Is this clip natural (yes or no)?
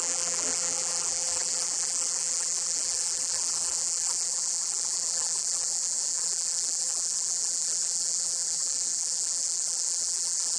no